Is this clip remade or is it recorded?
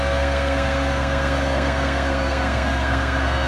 remade